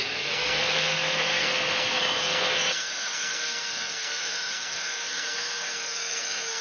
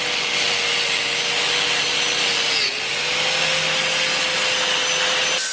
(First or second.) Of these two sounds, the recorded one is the second